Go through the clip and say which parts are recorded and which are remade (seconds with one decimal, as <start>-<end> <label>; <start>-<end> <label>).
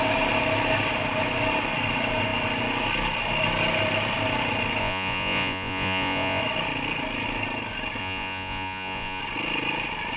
0.0-4.8 recorded; 4.8-6.4 remade; 6.4-8.0 recorded; 8.0-9.2 remade; 9.2-10.2 recorded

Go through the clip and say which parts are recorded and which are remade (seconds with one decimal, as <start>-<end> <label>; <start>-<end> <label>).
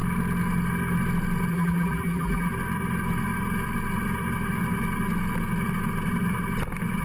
0.0-1.5 recorded; 1.5-2.5 remade; 2.5-7.0 recorded